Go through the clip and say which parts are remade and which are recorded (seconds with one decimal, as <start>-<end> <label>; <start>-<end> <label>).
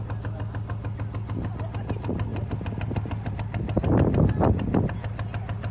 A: 0.0-5.7 recorded